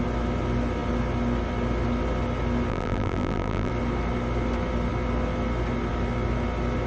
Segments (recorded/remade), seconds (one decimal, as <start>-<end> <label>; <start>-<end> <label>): 0.0-2.7 recorded; 2.7-3.7 remade; 3.7-6.9 recorded